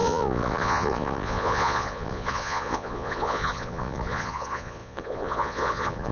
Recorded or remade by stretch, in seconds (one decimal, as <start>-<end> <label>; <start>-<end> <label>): 0.0-6.1 remade